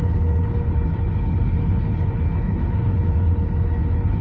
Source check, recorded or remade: remade